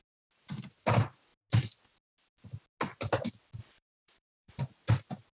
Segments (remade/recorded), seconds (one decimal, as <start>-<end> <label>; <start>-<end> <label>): 0.0-3.6 recorded; 3.6-4.6 remade; 4.6-5.4 recorded